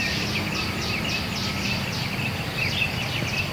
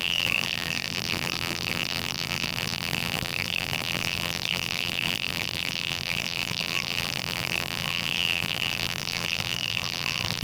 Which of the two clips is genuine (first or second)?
first